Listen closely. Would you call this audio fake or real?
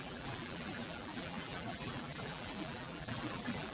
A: fake